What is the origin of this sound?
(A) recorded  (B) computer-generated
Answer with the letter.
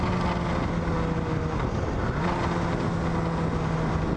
A